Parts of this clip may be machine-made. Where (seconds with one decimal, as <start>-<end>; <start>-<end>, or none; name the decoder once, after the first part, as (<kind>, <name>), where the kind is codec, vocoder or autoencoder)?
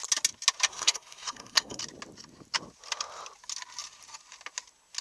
0.7-1.8 (codec, SNAC)